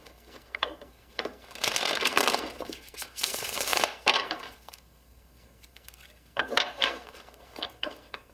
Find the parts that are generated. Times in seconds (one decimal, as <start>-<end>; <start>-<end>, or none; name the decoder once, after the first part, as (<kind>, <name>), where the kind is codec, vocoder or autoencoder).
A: 0.0-8.3 (codec, SNAC)

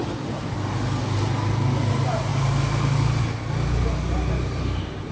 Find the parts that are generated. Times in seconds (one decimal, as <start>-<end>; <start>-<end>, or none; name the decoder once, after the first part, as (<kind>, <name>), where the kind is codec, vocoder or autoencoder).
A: none